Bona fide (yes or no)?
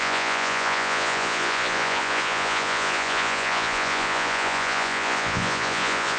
no